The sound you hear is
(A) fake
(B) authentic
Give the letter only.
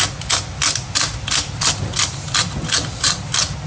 B